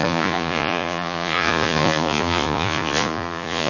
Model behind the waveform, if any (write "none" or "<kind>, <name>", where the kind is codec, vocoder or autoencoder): vocoder, Vocos